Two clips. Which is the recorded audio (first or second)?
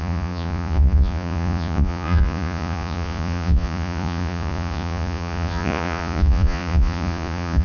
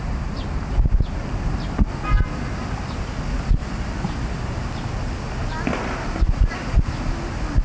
second